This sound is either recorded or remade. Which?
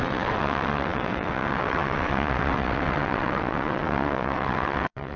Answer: remade